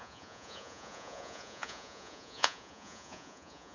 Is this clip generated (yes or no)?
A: yes